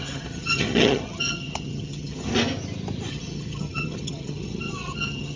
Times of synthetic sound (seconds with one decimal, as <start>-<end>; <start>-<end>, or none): 0.0-2.3; 3.1-5.4